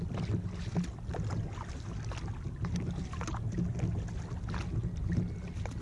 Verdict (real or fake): real